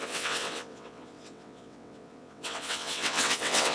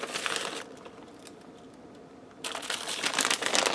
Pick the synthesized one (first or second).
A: first